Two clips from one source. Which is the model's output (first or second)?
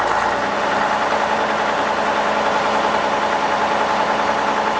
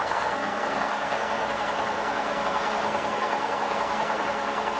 second